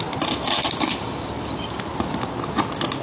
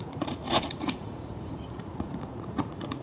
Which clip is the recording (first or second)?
first